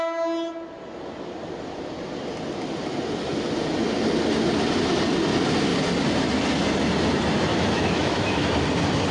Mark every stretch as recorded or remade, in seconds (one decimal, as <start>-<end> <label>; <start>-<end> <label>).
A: 0.0-7.5 recorded; 7.5-8.6 remade; 8.6-9.1 recorded